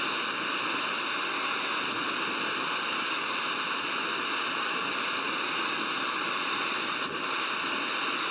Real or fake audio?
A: real